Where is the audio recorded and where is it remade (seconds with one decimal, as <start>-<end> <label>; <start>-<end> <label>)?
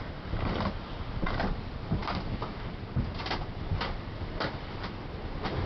0.0-5.7 recorded